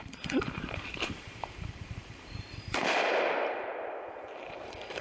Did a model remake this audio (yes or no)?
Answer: yes